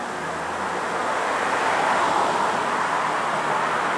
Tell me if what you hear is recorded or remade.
recorded